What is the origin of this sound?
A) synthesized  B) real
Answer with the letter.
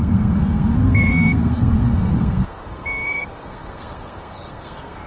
A